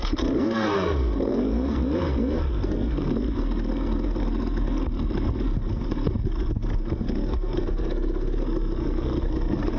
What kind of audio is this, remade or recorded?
remade